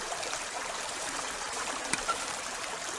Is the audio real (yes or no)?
no